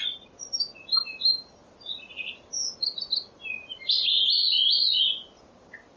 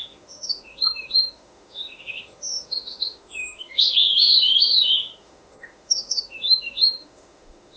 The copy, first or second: second